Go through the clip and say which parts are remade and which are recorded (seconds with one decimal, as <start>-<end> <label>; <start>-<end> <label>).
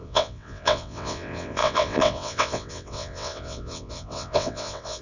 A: 0.0-5.0 remade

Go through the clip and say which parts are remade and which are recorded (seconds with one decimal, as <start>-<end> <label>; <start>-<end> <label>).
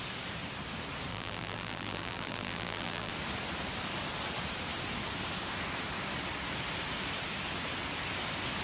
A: 0.0-1.1 recorded; 1.1-3.1 remade; 3.1-8.6 recorded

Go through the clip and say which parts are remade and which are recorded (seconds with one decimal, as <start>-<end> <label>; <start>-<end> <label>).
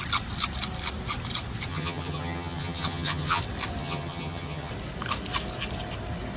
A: 0.0-1.7 recorded; 1.7-3.4 remade; 3.4-3.8 recorded; 3.8-4.7 remade; 4.7-6.4 recorded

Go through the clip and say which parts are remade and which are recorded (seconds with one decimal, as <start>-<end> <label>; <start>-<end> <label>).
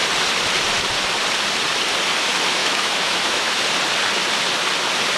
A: 0.0-2.6 recorded; 2.6-3.6 remade; 3.6-5.2 recorded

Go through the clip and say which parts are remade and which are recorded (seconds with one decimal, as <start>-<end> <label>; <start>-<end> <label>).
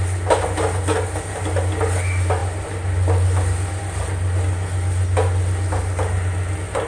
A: 0.0-6.9 recorded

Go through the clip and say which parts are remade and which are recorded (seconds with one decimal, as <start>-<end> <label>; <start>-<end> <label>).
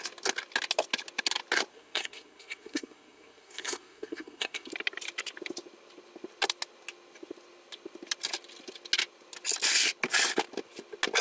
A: 0.0-1.7 recorded; 1.7-4.7 remade; 4.7-11.2 recorded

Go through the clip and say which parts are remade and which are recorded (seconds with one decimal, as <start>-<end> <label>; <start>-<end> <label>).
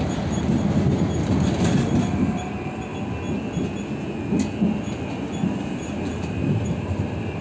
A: 0.0-2.9 remade; 2.9-5.1 recorded; 5.1-7.4 remade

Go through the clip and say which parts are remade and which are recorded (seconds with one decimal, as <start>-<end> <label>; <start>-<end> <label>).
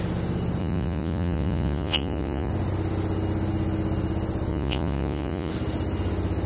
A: 0.0-0.6 recorded; 0.6-2.5 remade; 2.5-4.5 recorded; 4.5-5.5 remade; 5.5-6.5 recorded